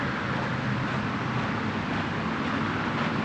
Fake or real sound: real